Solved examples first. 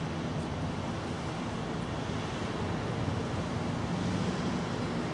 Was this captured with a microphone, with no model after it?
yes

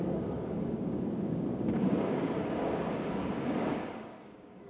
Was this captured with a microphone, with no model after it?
no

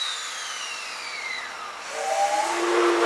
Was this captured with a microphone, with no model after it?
yes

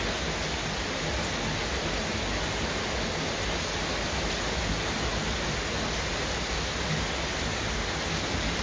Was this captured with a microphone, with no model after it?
yes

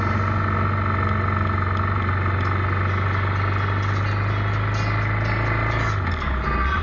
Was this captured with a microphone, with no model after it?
yes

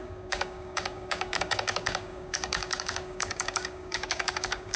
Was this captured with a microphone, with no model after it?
no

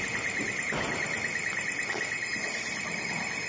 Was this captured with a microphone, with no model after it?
yes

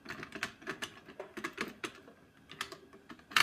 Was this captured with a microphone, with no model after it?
yes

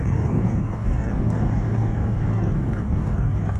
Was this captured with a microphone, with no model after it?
no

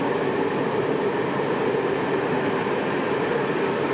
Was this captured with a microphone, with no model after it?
yes